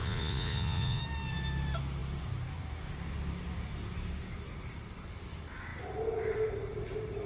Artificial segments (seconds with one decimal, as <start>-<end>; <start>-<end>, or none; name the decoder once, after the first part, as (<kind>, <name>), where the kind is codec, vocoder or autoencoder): 0.0-1.0 (vocoder, Vocos)

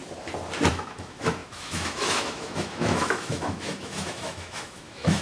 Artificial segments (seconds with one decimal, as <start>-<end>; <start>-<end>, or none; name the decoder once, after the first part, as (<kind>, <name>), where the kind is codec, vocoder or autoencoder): 0.7-5.2 (autoencoder, DAC-VAE)

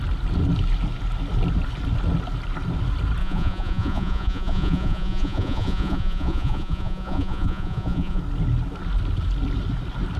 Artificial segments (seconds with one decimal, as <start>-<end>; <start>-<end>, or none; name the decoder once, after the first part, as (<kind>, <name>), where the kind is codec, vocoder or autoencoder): 3.2-8.2 (vocoder, Vocos)

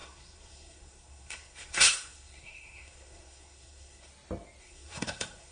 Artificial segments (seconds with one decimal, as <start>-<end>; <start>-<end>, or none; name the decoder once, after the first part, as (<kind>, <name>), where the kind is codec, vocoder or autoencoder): 0.0-4.1 (codec, SNAC); 4.6-5.5

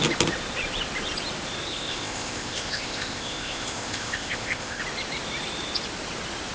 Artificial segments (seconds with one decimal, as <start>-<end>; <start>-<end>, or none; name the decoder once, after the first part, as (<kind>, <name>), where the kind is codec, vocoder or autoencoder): 1.7-4.8 (codec, ZipCodec)

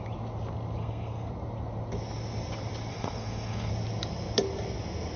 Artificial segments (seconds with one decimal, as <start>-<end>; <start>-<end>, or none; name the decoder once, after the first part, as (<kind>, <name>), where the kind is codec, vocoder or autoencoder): 0.8-1.3 (codec, SNAC); 2.9-3.7

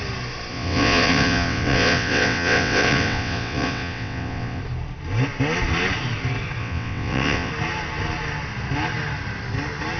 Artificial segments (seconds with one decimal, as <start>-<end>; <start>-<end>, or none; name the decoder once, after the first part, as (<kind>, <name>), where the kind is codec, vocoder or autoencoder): 0.5-4.6 (vocoder, WaveNeXt); 6.6-7.5